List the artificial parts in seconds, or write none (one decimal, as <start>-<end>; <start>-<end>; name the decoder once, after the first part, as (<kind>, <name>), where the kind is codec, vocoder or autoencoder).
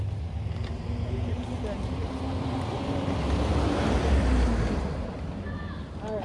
none